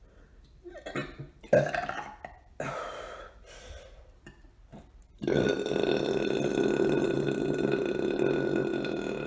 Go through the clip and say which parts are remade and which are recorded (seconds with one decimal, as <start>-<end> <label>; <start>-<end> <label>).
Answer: 0.0-1.0 recorded; 1.0-5.9 remade; 5.9-9.3 recorded